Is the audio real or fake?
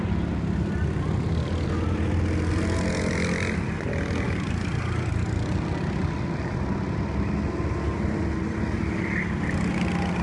real